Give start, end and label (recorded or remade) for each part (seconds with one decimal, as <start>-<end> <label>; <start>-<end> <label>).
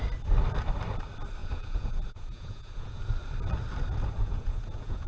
0.0-1.4 recorded; 1.4-3.0 remade; 3.0-4.2 recorded; 4.2-5.1 remade